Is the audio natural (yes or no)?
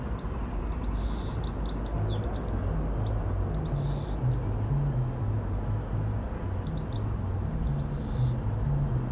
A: yes